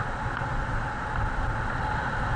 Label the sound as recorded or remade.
recorded